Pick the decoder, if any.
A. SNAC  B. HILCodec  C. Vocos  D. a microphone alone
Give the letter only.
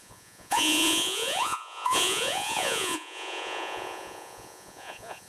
C